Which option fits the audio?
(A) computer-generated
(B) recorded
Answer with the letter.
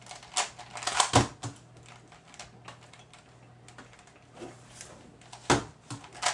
B